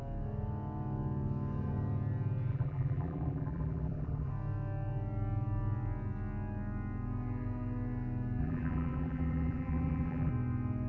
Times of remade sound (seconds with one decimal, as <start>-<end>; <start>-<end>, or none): 2.5-4.3; 8.4-10.3